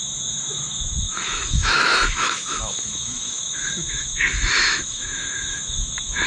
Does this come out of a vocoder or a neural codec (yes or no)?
yes